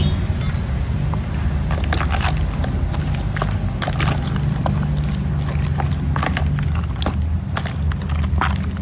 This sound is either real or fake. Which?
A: real